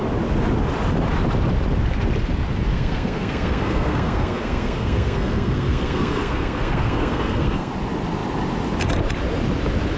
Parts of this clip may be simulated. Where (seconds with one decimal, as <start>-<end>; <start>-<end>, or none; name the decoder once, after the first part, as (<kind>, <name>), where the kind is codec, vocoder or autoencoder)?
2.7-7.7 (codec, SNAC)